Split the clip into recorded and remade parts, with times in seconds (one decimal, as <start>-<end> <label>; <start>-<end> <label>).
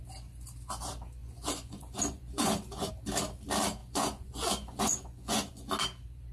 0.0-1.2 recorded; 1.2-2.9 remade; 2.9-3.8 recorded; 3.8-5.7 remade; 5.7-6.3 recorded